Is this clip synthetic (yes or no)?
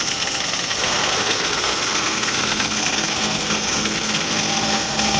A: yes